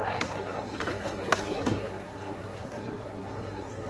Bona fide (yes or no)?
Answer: no